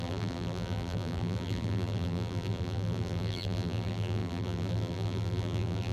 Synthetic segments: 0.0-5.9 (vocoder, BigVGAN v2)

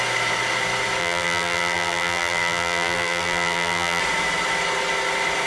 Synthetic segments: 1.0-4.0 (vocoder, BigVGAN v2)